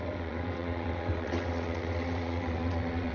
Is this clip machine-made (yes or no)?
yes